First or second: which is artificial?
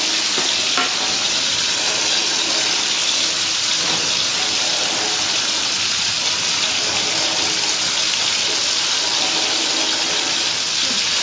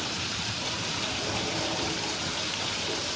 second